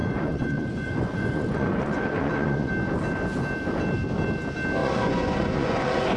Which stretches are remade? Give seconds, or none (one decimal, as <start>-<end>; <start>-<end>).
0.0-2.7; 4.8-6.2